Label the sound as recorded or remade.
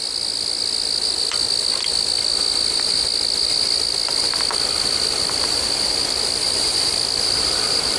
recorded